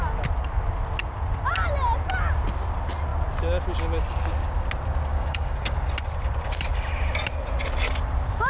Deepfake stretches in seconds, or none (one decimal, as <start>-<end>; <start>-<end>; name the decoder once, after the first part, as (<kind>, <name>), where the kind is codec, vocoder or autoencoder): 5.1-5.9 (codec, DAC)